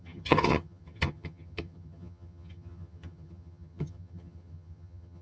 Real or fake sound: fake